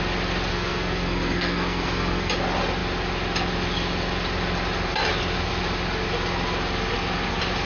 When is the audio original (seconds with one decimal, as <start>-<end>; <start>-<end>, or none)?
0.0-0.5; 2.3-7.7